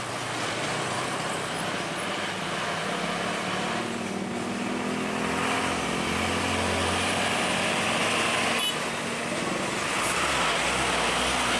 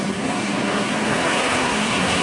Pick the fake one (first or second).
second